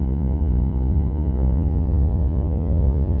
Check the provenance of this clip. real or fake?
fake